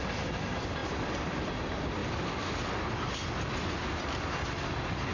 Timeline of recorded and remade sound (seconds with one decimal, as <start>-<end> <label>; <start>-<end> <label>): 0.0-2.0 recorded; 2.0-3.3 remade; 3.3-5.1 recorded